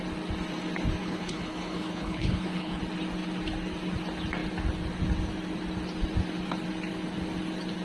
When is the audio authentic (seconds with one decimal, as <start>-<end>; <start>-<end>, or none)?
0.0-1.0; 2.8-7.8

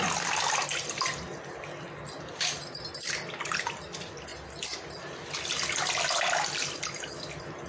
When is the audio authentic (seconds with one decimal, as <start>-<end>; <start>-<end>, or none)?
0.0-7.7

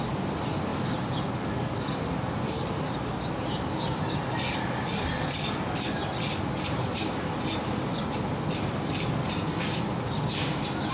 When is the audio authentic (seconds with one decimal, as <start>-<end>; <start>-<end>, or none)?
0.0-10.9

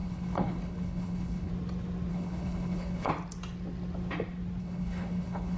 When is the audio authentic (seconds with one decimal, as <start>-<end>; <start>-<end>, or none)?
1.5-2.1; 3.1-4.6

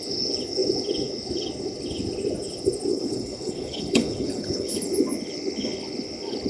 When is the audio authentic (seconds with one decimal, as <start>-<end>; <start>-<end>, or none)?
0.0-2.9; 4.8-6.5

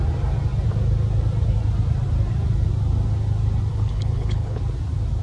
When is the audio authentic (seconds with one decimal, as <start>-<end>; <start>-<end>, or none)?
0.0-3.7; 4.6-5.2

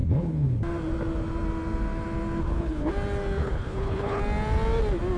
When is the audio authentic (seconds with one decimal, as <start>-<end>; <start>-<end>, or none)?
0.6-2.4; 2.9-3.4; 4.2-5.2

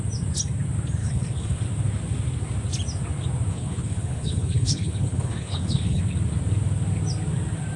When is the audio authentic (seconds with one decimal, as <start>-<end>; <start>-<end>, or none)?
0.0-1.0; 1.6-3.5; 6.0-7.8